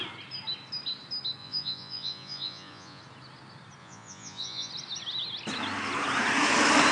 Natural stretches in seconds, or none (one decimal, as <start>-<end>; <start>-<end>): 0.0-1.4; 3.0-3.8; 4.7-6.9